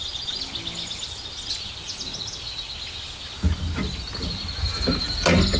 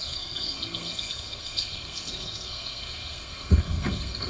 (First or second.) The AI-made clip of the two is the second